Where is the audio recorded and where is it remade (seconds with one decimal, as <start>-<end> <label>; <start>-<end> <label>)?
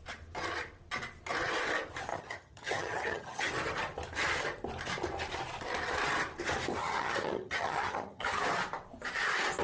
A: 0.0-2.1 recorded; 2.1-3.5 remade; 3.5-6.8 recorded; 6.8-8.4 remade; 8.4-9.6 recorded